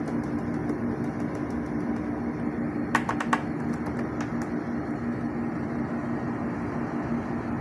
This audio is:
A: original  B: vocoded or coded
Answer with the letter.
A